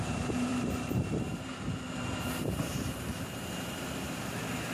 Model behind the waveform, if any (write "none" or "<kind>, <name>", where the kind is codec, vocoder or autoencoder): vocoder, BigVGAN v2